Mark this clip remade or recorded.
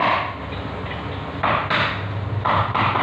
recorded